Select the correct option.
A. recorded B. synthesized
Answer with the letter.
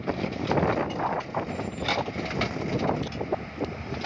A